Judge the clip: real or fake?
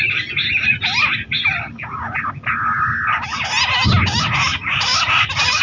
real